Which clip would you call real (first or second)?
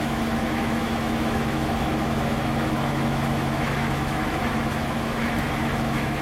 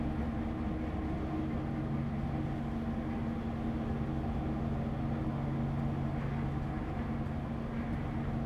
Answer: second